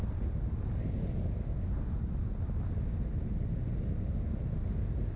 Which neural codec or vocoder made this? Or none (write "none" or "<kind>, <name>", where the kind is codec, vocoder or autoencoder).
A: none